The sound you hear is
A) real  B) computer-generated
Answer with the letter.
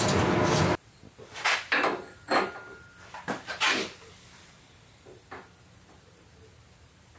A